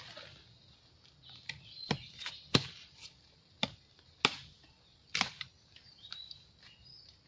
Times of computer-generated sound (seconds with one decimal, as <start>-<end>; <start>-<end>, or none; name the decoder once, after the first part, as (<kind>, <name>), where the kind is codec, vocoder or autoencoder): none

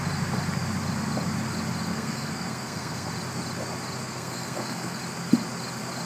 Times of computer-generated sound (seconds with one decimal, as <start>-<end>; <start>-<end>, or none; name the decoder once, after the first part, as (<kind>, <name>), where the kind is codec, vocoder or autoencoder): 1.9-3.1 (codec, SNAC); 4.0-5.0

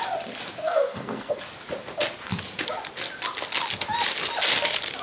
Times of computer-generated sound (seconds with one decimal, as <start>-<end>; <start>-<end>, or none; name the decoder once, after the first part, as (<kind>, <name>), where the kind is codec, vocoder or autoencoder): 0.6-1.4 (codec, SNAC)

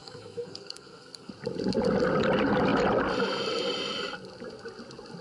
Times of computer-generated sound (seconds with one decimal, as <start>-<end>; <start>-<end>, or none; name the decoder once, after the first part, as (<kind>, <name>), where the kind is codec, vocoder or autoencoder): 0.0-1.3 (codec, SNAC)

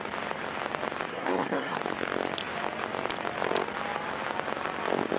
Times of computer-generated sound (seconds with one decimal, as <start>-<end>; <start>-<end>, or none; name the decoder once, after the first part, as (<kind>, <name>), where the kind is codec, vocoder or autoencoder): 1.1-1.8 (codec, SNAC)

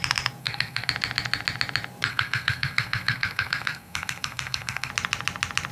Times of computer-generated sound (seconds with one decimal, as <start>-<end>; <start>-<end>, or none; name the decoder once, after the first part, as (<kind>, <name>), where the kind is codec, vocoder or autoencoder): 0.4-0.9 (codec, SNAC); 2.1-4.9

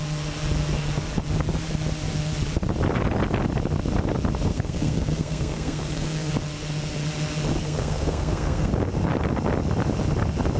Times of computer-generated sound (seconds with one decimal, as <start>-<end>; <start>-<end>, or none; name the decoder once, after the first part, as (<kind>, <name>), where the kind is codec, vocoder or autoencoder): 4.5-6.3 (codec, SNAC); 7.6-8.7